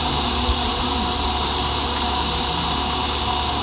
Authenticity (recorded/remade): remade